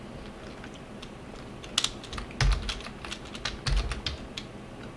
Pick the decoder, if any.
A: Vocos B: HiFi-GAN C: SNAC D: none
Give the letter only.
D